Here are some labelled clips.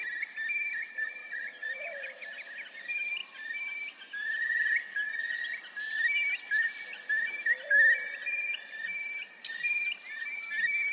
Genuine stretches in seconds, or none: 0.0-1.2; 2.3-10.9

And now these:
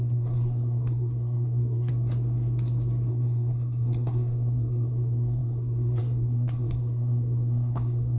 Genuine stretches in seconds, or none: 1.9-3.1

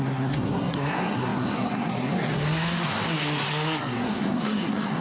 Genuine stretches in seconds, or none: none

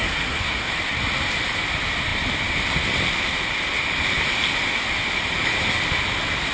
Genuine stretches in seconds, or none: 0.7-6.5

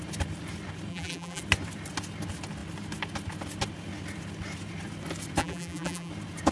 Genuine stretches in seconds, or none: 0.0-0.9; 1.4-5.4; 6.1-6.5

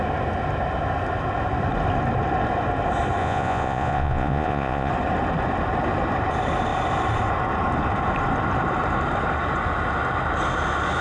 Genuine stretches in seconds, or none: 0.0-3.2; 4.9-11.0

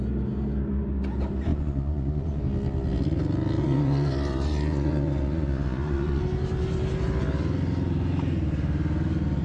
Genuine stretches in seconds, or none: 0.0-1.5; 2.4-3.6; 6.2-9.4